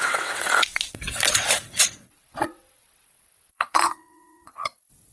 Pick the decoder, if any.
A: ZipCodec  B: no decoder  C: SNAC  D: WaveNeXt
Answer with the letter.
D